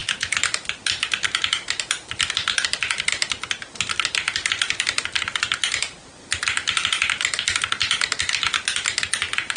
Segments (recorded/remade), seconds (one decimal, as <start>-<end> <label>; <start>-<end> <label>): 0.0-9.6 recorded